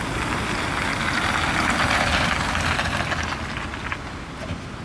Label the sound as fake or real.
real